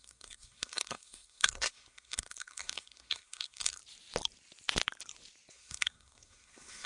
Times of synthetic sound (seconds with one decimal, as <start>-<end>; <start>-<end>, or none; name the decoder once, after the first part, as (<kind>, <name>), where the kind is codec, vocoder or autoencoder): 0.0-3.8 (codec, SNAC); 5.5-6.9